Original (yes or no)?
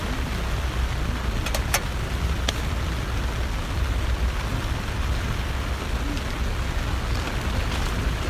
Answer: yes